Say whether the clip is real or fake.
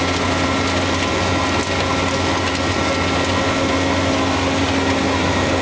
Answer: real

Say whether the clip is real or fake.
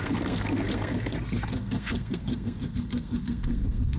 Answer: fake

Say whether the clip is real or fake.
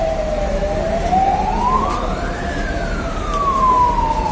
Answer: fake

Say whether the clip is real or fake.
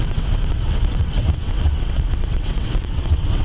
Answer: fake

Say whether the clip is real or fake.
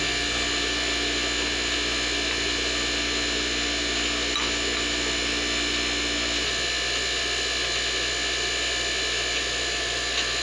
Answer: real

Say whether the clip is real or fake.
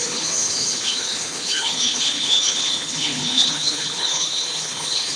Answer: fake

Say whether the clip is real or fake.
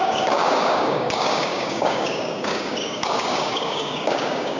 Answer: fake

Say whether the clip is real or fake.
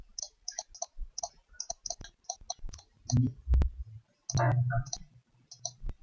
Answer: real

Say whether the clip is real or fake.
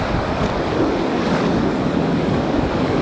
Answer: fake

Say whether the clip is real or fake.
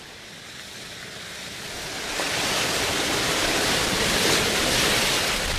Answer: real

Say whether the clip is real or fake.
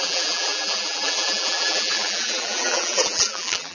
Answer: fake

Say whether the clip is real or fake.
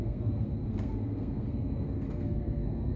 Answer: fake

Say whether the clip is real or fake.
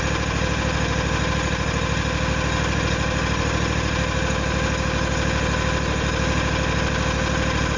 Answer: real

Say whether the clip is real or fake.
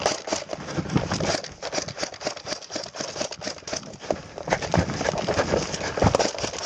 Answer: real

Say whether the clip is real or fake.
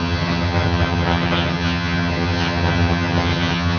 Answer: fake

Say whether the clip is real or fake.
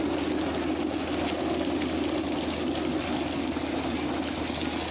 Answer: real